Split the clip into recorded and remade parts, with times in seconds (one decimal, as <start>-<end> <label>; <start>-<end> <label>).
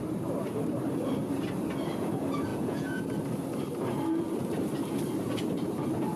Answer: 0.0-2.5 recorded; 2.5-3.0 remade; 3.0-6.2 recorded